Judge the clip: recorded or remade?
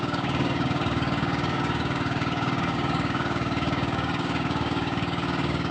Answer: remade